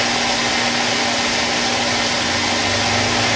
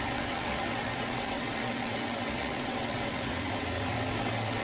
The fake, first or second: second